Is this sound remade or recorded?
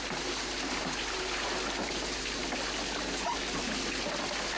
recorded